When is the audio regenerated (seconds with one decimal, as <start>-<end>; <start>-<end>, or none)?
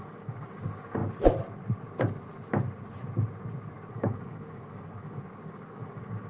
0.0-1.0; 3.9-6.3